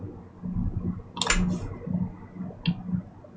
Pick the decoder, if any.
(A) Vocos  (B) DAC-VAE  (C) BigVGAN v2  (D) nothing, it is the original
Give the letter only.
D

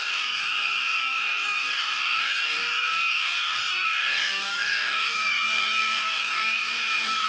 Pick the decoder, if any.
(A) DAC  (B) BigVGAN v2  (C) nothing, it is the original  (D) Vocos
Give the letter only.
A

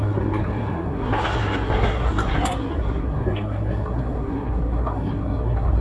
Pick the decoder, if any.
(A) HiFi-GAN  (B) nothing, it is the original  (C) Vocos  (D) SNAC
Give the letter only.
D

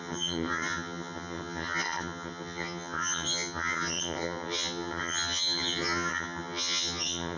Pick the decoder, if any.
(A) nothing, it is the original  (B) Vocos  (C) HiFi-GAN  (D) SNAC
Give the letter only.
C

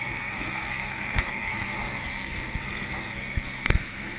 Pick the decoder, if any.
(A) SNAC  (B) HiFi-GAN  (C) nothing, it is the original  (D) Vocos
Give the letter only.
A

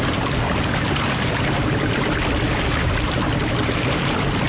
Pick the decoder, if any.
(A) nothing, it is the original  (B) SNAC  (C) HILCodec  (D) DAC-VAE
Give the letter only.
A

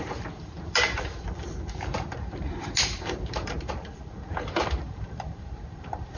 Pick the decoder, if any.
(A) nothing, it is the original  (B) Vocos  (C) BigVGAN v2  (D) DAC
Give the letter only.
C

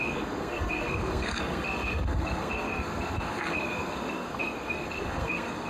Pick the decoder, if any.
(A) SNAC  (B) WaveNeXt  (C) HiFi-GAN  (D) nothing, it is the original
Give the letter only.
A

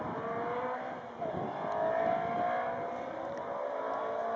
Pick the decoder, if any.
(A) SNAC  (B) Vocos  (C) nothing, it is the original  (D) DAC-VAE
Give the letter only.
C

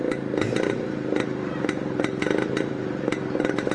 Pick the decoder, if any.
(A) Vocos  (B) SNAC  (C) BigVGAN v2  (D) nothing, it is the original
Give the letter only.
D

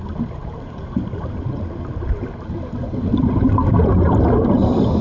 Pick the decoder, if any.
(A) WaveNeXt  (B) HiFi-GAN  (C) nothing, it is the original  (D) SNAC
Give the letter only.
C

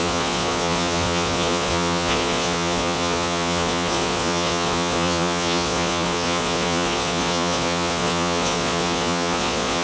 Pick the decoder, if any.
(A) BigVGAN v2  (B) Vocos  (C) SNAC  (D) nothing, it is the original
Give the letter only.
B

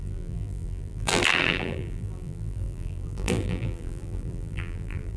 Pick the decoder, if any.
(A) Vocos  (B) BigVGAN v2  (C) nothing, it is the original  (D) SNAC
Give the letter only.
B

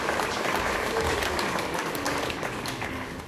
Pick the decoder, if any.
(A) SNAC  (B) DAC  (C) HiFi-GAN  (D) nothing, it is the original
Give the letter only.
B